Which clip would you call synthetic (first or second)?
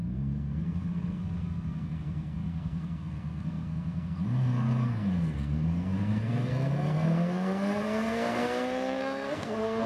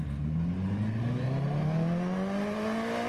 first